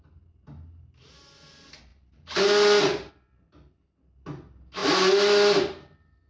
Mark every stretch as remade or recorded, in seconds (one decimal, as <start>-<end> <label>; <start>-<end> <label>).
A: 0.0-6.3 recorded